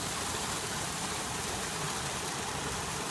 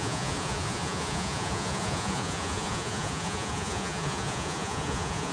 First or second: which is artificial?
second